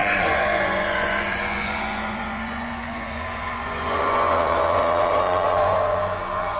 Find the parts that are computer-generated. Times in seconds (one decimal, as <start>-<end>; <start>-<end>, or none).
0.0-6.6

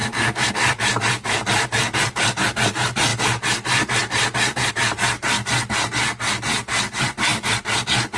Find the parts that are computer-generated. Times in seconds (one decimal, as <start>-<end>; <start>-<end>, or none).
none

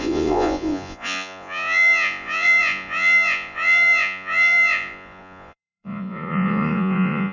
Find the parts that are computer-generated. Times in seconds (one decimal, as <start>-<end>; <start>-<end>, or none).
0.0-7.3

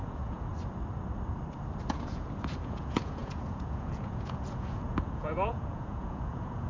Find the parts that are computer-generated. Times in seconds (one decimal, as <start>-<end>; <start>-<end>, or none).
0.0-0.5; 1.9-6.7